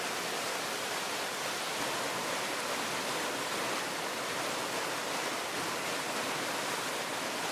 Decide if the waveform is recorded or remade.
recorded